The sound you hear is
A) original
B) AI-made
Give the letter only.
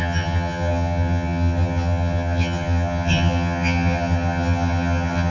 B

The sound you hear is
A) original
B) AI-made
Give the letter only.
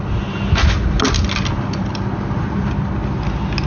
A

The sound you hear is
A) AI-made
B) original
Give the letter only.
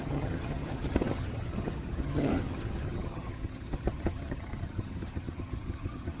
A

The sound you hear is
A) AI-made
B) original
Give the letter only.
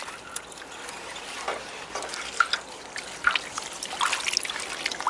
B